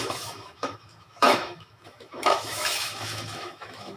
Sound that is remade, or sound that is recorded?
remade